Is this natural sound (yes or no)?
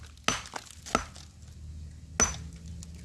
yes